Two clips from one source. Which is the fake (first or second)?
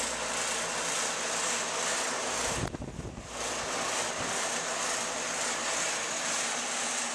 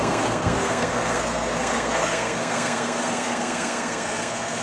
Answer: second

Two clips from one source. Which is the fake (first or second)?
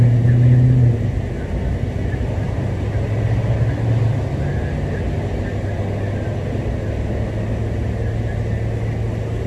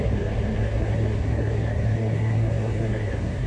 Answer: second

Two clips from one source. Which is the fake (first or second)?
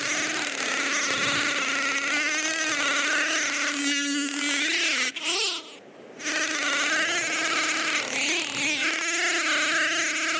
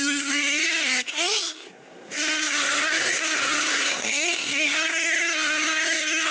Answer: second